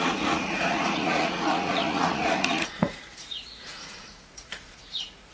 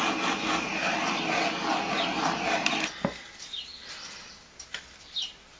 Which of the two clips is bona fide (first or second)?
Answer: second